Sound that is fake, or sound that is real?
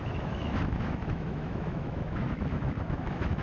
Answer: fake